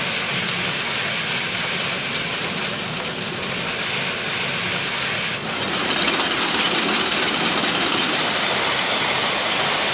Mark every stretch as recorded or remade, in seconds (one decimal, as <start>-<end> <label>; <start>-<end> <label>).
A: 0.0-9.9 recorded